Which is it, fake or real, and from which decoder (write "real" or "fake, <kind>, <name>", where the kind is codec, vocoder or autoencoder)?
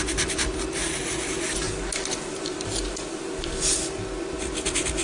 real